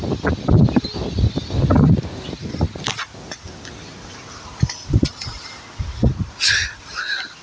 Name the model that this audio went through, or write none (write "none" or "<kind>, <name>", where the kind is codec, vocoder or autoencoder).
none